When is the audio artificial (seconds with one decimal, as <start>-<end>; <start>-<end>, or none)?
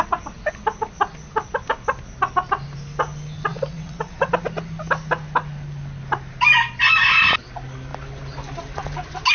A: 3.5-4.3